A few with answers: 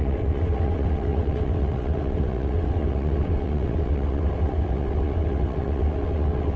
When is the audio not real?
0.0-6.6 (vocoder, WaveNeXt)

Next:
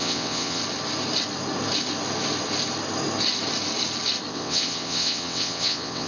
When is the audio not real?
0.0-0.6 (vocoder, WaveNeXt); 4.3-6.1

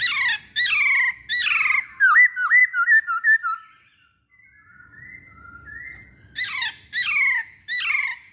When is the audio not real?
none